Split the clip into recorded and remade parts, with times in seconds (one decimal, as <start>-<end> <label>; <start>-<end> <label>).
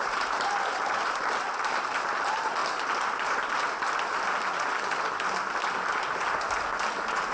0.0-2.6 remade; 2.6-7.3 recorded